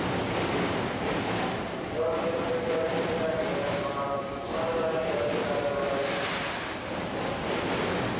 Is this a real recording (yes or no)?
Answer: yes